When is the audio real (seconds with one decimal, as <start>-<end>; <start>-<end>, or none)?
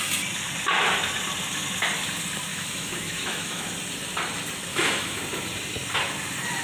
0.0-2.5; 3.7-4.7; 5.2-6.6